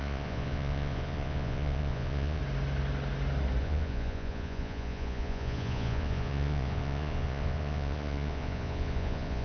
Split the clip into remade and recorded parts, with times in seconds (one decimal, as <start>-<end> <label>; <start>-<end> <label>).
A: 0.0-2.4 remade; 2.4-3.6 recorded; 3.6-9.4 remade